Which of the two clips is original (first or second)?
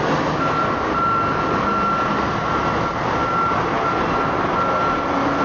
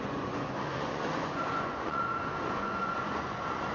first